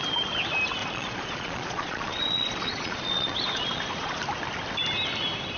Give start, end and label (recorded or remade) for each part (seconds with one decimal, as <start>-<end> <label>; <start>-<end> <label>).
0.0-0.8 recorded; 0.8-4.2 remade; 4.2-5.6 recorded